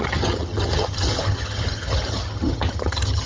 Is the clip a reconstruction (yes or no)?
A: yes